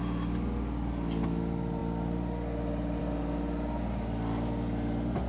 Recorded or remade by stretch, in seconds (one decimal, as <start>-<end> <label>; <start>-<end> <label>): 0.0-5.3 recorded